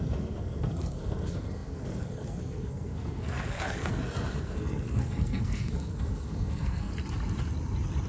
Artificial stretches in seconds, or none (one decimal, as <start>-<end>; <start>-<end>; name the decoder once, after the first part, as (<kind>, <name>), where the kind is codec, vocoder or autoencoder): 0.0-6.9 (codec, SNAC)